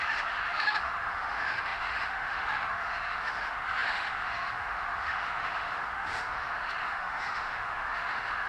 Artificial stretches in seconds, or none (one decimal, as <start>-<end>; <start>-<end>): 0.0-8.5

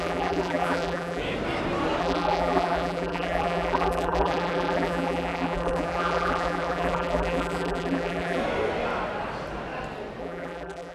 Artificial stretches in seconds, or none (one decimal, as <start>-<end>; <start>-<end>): 0.0-1.2; 2.0-8.4; 10.2-10.9

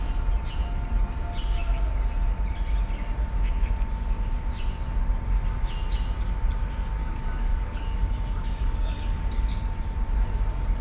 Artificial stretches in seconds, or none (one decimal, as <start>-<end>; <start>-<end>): 7.0-9.4

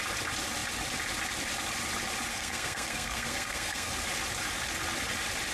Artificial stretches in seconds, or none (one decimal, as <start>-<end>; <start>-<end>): 2.3-3.9

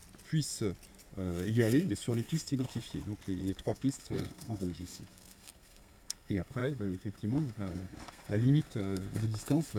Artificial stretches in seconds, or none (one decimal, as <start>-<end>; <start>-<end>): 1.1-2.8; 3.4-9.8

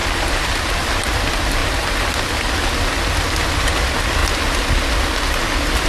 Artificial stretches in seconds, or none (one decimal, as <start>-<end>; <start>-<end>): none

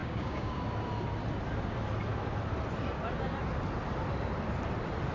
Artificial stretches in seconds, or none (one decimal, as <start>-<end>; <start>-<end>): 0.0-0.6

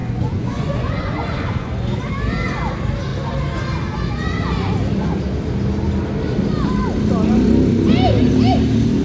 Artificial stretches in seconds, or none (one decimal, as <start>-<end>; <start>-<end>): 0.0-2.0